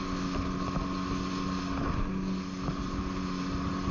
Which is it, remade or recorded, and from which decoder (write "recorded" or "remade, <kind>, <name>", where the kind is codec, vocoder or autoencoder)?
recorded